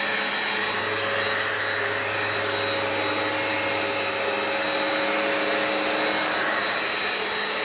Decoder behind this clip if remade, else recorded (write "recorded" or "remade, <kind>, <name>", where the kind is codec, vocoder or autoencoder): recorded